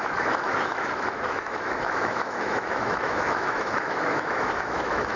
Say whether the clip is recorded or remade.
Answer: remade